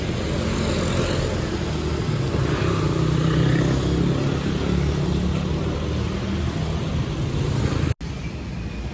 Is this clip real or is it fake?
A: real